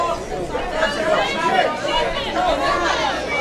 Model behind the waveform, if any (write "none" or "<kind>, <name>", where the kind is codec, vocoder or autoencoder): none